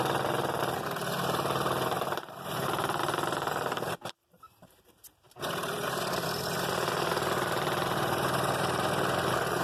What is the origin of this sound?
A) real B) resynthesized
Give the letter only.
B